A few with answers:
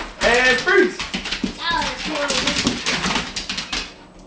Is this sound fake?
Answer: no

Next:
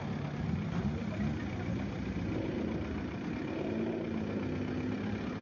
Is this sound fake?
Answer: no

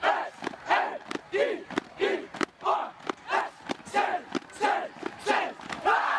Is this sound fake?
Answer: no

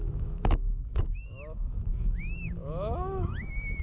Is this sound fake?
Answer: yes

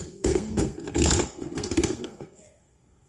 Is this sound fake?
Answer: yes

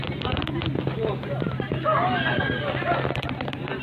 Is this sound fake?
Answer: no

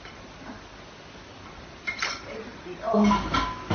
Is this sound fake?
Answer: no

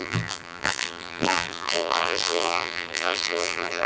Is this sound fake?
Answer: yes